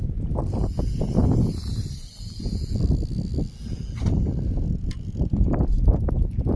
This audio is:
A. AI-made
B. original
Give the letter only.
B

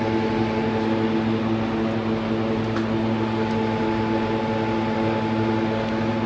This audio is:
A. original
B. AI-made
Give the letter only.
A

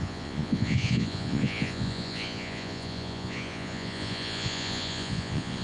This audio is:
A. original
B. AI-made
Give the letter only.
B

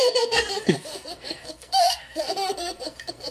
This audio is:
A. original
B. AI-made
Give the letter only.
B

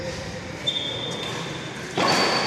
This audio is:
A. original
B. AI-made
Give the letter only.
B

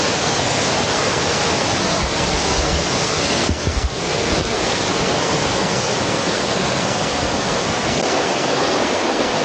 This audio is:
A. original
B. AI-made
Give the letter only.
B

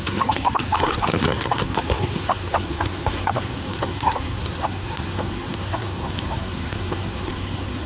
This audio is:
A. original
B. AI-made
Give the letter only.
B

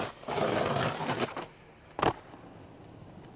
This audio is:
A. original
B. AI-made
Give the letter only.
A